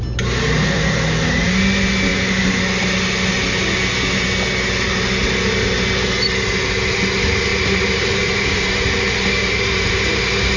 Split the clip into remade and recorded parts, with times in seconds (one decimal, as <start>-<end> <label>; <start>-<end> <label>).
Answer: 0.0-7.5 recorded; 7.5-10.2 remade; 10.2-10.6 recorded